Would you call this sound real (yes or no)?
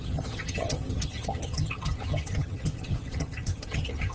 no